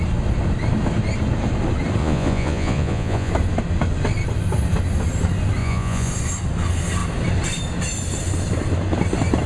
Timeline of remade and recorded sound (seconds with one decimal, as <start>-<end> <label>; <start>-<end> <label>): 0.0-2.0 recorded; 2.0-3.3 remade; 3.3-5.6 recorded; 5.6-6.1 remade; 6.1-9.5 recorded

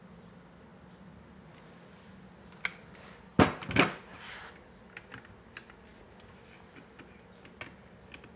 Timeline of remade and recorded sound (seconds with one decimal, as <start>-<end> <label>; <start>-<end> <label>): 0.0-8.4 recorded

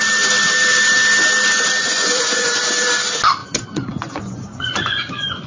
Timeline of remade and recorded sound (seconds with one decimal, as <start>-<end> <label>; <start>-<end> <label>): 0.0-1.8 recorded; 1.8-2.6 remade; 2.6-3.4 recorded; 3.4-5.5 remade

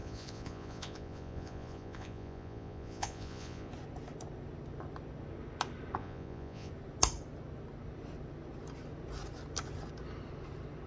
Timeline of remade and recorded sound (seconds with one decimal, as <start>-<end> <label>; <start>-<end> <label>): 0.0-3.7 remade; 3.7-6.0 recorded; 6.0-6.7 remade; 6.7-10.9 recorded

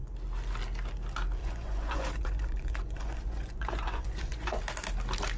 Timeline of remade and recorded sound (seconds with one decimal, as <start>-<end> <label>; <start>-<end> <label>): 0.0-1.4 recorded; 1.4-4.6 remade; 4.6-5.4 recorded

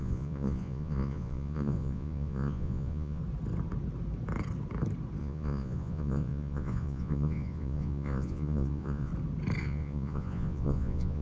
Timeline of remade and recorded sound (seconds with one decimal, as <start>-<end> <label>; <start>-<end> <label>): 0.0-3.2 remade; 3.2-5.2 recorded; 5.2-9.1 remade; 9.1-9.6 recorded; 9.6-11.2 remade

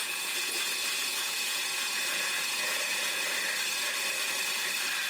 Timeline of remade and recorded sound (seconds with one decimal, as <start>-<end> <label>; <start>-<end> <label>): 0.0-0.7 remade; 0.7-1.1 recorded; 1.1-3.2 remade; 3.2-5.1 recorded